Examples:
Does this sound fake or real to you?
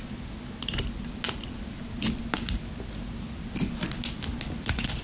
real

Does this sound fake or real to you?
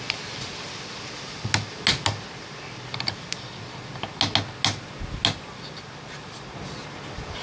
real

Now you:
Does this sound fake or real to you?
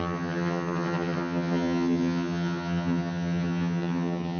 fake